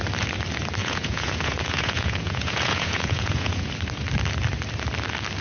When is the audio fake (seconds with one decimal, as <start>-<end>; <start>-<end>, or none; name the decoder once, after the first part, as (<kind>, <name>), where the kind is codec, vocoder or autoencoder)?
0.8-3.7 (vocoder, Vocos)